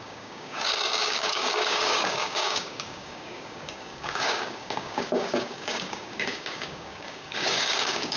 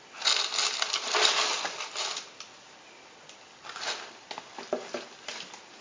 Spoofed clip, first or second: first